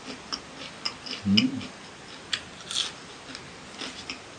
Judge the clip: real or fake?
real